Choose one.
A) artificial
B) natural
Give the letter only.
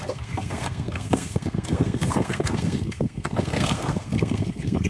A